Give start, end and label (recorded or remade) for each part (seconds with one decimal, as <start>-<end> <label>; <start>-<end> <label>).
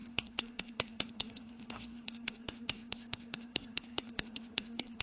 0.0-5.0 remade